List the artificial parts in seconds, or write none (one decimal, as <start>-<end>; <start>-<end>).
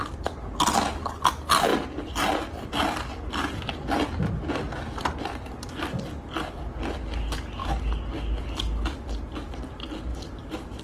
10.1-10.8